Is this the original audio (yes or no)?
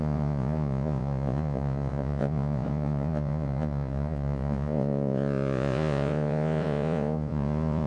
no